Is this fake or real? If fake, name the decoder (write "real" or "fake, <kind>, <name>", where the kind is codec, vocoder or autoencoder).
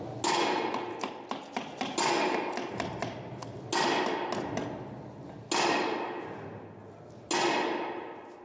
real